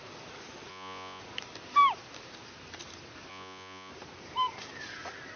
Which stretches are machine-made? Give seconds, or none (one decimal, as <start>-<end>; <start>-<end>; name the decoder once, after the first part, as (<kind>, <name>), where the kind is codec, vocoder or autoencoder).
0.7-1.2 (vocoder, Vocos); 3.3-3.9